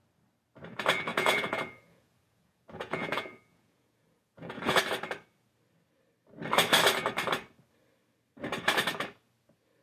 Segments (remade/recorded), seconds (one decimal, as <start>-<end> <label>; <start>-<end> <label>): 0.0-1.1 recorded; 1.1-4.8 remade; 4.8-9.8 recorded